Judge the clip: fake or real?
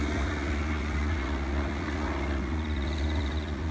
fake